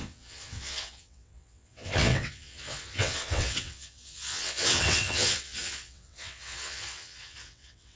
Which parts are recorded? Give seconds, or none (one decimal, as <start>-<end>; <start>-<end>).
none